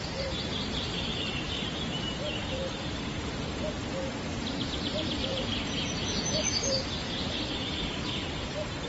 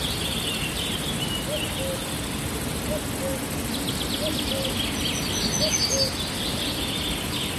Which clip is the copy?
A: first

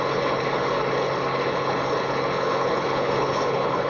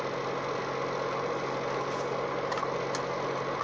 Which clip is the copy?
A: first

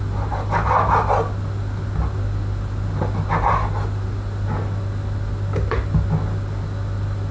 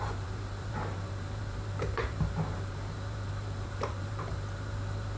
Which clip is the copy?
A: second